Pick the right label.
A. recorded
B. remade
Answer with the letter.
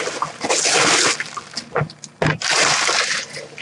A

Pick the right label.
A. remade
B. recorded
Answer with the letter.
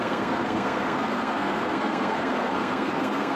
A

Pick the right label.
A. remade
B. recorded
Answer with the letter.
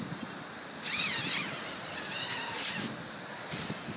B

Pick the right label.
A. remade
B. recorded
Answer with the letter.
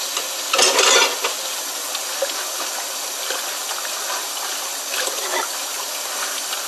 B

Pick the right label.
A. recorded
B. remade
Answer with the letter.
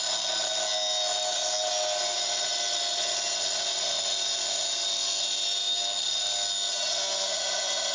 A